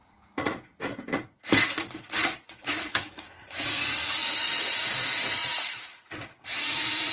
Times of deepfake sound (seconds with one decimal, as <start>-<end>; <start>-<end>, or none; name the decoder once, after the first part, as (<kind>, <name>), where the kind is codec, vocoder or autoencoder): 0.0-7.1 (vocoder, Vocos)

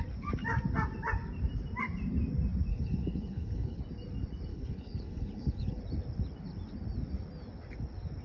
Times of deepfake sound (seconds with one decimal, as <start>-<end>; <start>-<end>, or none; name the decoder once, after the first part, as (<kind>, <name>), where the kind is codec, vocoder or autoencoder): 2.7-3.8 (codec, HILCodec); 4.5-5.8

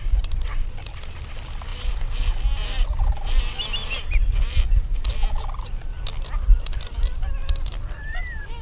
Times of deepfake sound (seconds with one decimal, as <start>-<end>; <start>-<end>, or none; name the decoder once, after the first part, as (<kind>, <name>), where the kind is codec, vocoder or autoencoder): 7.4-8.6 (vocoder, BigVGAN v2)

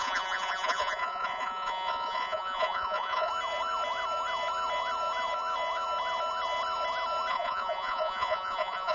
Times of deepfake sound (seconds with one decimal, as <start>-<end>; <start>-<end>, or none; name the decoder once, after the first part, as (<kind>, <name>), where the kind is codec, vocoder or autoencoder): 0.0-3.3 (vocoder, Vocos); 7.3-8.9

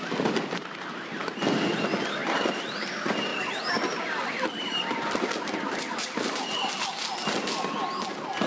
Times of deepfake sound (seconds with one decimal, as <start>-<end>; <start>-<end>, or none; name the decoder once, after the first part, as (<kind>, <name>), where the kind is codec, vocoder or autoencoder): none

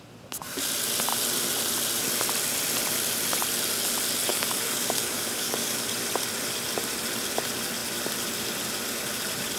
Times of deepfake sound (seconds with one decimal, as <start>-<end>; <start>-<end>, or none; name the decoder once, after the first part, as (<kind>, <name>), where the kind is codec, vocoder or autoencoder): 4.3-5.9 (codec, DAC)

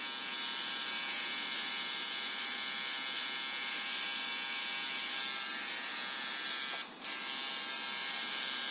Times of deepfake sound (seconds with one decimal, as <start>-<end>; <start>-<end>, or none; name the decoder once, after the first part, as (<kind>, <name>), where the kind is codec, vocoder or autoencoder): none

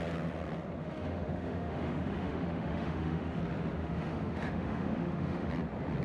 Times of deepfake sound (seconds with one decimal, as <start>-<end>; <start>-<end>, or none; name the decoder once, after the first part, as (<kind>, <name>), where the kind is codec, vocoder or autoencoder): 0.8-3.4 (autoencoder, DAC-VAE); 3.8-5.5